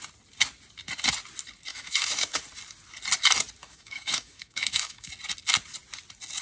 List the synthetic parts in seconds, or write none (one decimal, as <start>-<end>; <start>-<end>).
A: 1.7-2.4; 3.6-5.1